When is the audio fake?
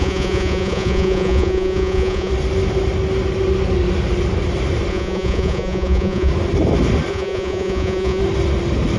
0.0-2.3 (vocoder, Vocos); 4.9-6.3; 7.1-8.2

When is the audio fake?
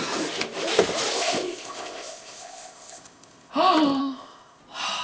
1.1-3.5 (codec, ZipCodec); 4.0-4.6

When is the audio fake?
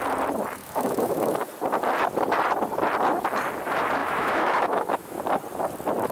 0.6-1.5 (autoencoder, DAC-VAE); 4.0-5.2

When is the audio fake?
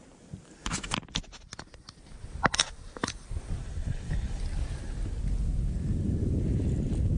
3.6-4.4 (codec, HILCodec)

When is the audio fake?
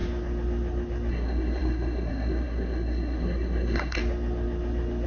1.1-4.0 (codec, SNAC)